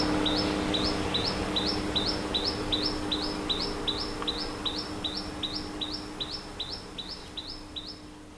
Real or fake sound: real